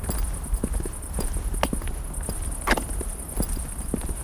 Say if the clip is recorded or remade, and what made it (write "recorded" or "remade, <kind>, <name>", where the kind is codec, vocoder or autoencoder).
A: recorded